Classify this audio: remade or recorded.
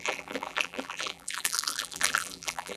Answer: remade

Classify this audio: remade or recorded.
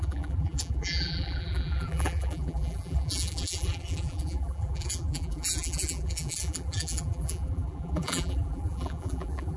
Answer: remade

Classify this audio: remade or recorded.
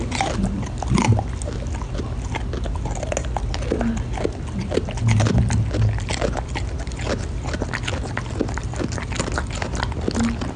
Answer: recorded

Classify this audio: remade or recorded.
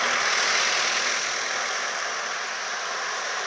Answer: recorded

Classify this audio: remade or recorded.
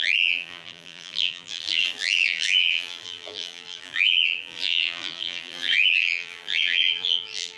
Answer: remade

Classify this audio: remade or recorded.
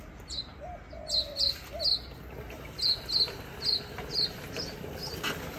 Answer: recorded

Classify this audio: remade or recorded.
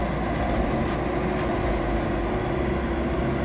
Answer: recorded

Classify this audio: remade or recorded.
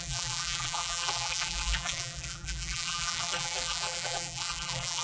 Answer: remade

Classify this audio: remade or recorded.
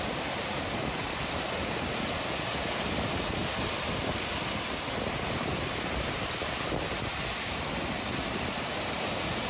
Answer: remade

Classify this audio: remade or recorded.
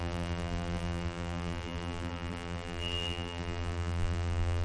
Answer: remade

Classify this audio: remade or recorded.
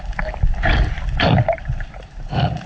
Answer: remade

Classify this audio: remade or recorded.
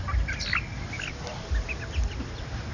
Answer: recorded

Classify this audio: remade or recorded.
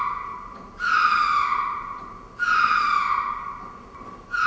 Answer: recorded